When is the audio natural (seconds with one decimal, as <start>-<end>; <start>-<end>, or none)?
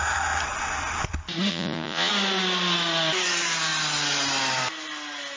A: 0.0-1.5; 2.1-5.4